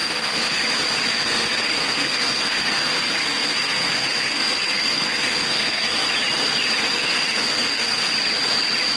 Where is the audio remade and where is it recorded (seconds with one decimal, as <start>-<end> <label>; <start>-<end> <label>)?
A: 0.0-0.6 remade; 0.6-1.1 recorded; 1.1-6.0 remade; 6.0-6.8 recorded; 6.8-8.1 remade; 8.1-9.0 recorded